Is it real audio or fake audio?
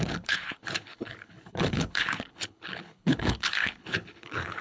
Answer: fake